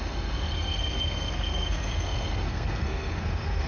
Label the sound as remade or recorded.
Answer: remade